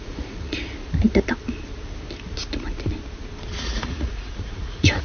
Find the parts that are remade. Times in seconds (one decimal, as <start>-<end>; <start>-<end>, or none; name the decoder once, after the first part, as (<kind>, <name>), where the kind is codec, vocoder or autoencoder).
0.0-0.6 (vocoder, Vocos); 3.6-5.0